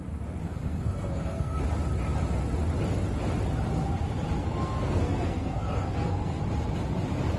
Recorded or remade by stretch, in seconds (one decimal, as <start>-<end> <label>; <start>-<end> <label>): 0.0-0.4 recorded; 0.4-1.6 remade; 1.6-4.4 recorded; 4.4-6.4 remade; 6.4-7.4 recorded